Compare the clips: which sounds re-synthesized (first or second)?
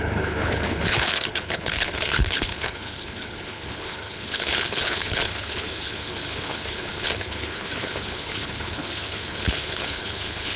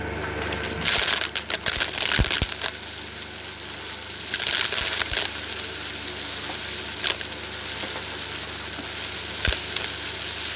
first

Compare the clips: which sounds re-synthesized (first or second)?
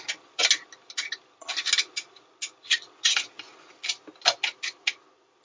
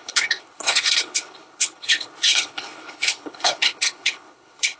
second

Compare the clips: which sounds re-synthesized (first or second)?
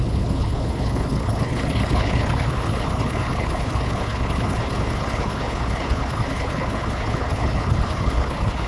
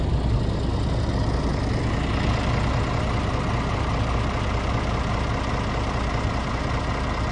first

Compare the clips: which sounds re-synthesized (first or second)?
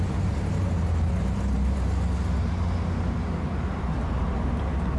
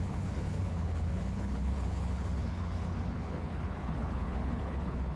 second